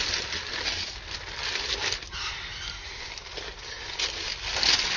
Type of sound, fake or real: real